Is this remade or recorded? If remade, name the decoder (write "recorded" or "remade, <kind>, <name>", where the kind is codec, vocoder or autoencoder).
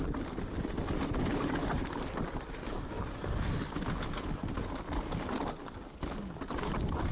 recorded